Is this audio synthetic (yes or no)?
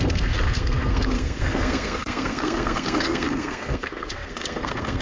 yes